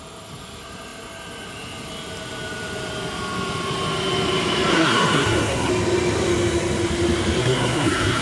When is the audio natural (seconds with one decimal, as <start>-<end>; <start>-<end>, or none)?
0.0-4.7; 5.7-7.4